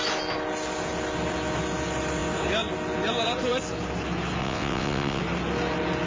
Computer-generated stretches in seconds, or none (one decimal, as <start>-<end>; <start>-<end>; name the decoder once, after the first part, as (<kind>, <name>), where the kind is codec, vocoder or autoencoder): 4.4-5.2 (vocoder, WaveNeXt)